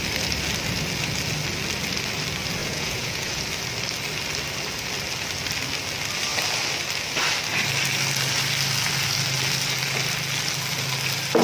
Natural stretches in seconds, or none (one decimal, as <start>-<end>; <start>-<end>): 0.0-2.6; 3.4-11.4